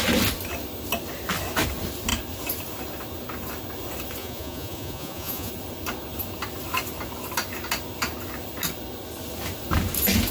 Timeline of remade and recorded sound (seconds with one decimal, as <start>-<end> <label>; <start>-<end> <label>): 0.0-4.2 recorded; 4.2-5.5 remade; 5.5-10.3 recorded